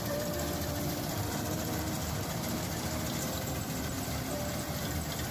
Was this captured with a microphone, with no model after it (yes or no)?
no